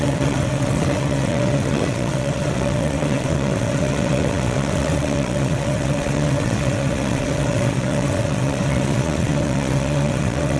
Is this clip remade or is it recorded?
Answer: remade